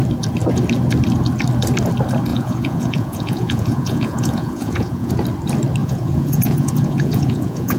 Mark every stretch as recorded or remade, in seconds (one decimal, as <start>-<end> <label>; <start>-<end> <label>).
0.0-2.3 recorded; 2.3-5.1 remade; 5.1-5.8 recorded; 5.8-7.8 remade